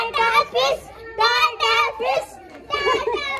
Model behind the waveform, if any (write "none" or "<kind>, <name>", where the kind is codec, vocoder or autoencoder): vocoder, BigVGAN v2